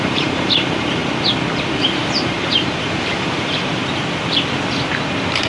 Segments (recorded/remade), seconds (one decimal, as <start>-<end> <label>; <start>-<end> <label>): 0.0-1.0 remade; 1.0-1.8 recorded; 1.8-3.8 remade; 3.8-4.7 recorded; 4.7-5.5 remade